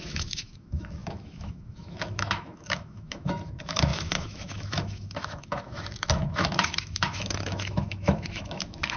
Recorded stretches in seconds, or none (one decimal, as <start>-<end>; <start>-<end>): none